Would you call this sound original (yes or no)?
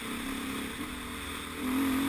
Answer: yes